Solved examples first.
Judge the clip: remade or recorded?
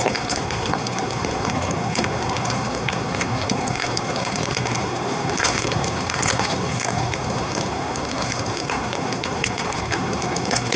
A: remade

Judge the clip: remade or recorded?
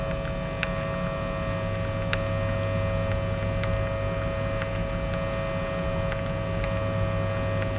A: recorded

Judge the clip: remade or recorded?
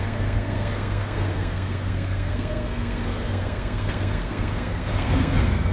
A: remade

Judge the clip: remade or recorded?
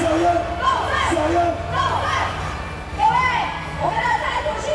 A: recorded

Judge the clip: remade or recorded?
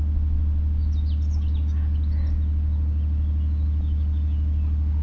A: recorded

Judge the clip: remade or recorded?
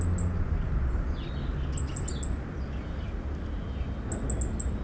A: recorded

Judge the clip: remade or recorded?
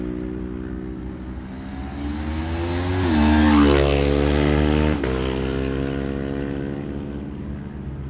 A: recorded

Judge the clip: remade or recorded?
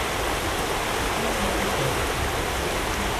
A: recorded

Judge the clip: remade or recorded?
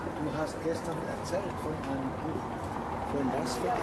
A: recorded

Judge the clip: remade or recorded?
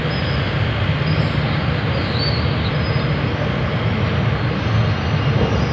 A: recorded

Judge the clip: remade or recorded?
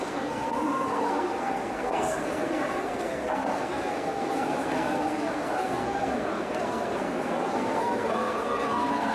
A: remade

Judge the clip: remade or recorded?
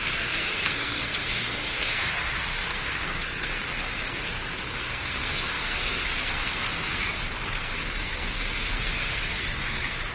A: remade